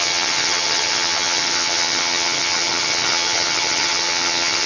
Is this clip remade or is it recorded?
remade